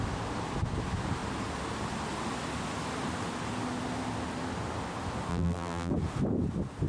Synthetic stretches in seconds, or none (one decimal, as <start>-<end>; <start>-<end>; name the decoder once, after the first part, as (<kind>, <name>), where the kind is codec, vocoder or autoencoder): 5.3-5.9 (vocoder, BigVGAN v2)